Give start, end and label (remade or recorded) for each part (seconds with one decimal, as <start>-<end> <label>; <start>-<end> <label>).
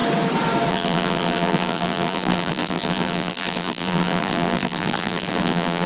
0.0-0.7 recorded; 0.7-5.9 remade